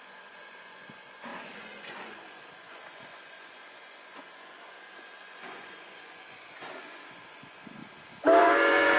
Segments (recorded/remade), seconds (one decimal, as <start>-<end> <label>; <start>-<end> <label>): 0.0-7.8 remade; 7.8-8.4 recorded; 8.4-9.0 remade